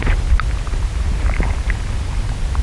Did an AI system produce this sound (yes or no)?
no